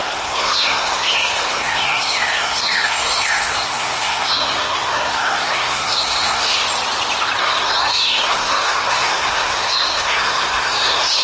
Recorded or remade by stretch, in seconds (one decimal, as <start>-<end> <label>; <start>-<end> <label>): 0.0-6.6 remade; 6.6-7.4 recorded; 7.4-11.2 remade